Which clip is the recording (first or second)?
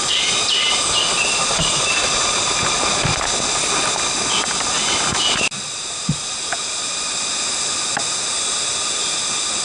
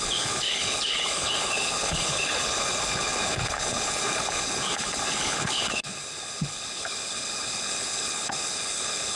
first